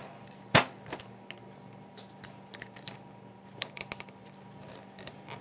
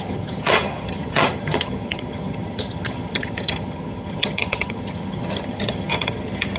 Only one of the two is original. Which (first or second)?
first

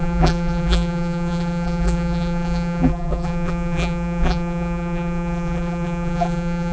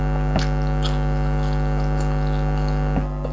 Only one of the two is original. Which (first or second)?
second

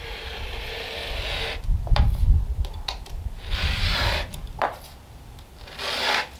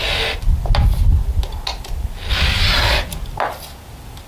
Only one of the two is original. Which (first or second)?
second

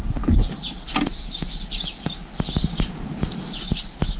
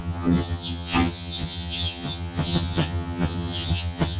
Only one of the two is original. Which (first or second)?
first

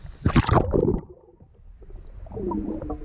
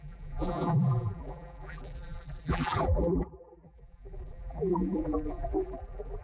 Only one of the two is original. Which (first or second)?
first